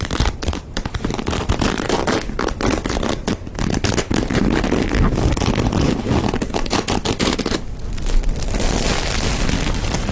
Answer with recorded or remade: recorded